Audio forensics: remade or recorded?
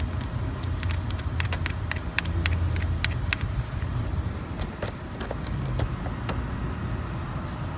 recorded